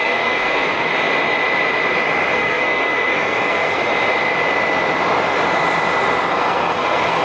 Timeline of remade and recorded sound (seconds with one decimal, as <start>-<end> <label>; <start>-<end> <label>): 0.0-0.9 remade; 0.9-2.3 recorded; 2.3-3.9 remade; 3.9-6.3 recorded; 6.3-7.2 remade